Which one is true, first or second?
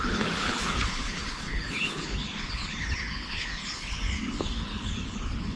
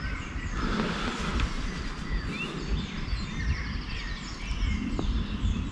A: second